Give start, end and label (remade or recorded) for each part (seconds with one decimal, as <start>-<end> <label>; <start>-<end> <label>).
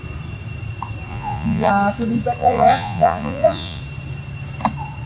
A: 0.0-1.1 recorded; 1.1-1.7 remade; 1.7-2.4 recorded; 2.4-3.8 remade; 3.8-5.1 recorded